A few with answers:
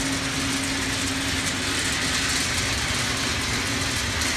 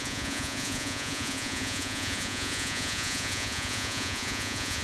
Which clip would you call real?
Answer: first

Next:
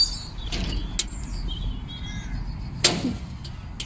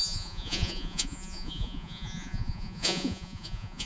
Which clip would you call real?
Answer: first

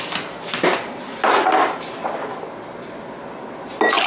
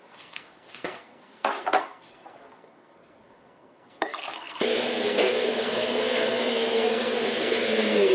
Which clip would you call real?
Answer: first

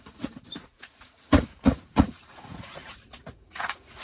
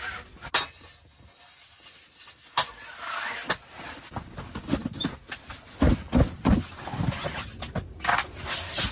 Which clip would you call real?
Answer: second